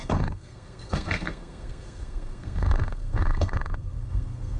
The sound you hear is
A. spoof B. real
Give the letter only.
A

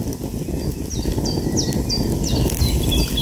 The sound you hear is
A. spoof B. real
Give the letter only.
B